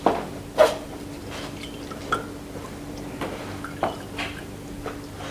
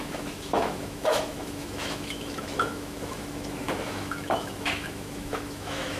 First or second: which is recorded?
first